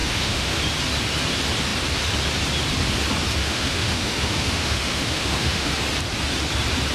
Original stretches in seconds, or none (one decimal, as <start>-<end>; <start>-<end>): 0.6-3.4; 5.7-6.9